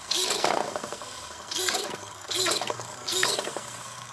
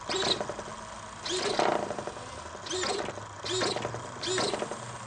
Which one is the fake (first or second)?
first